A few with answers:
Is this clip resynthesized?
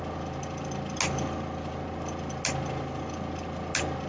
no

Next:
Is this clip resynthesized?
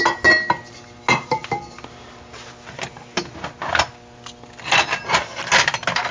no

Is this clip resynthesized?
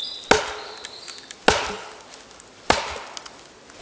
no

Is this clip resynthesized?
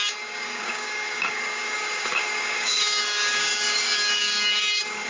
yes